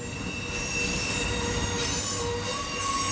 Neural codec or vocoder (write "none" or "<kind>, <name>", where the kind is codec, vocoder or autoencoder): none